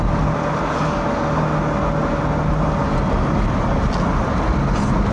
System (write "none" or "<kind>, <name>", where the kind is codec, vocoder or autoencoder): none